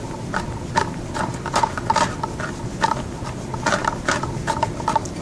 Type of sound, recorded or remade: recorded